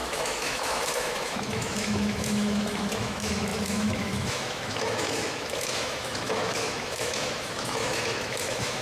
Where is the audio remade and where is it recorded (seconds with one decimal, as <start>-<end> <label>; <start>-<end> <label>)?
0.0-8.8 remade